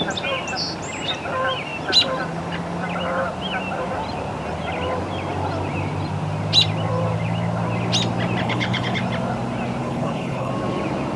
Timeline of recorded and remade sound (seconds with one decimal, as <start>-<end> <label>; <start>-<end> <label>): 0.0-8.4 recorded; 8.4-9.0 remade; 9.0-9.8 recorded; 9.8-10.5 remade; 10.5-11.2 recorded